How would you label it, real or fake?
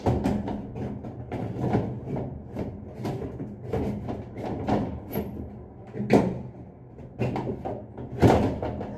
real